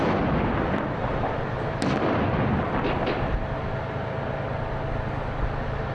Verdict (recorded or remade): recorded